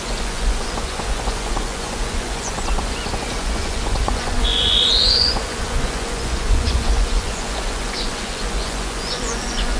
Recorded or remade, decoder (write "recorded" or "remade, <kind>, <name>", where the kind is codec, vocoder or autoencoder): remade, vocoder, Vocos